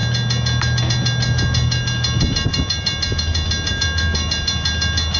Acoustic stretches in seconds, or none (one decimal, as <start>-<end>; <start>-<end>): 0.0-5.2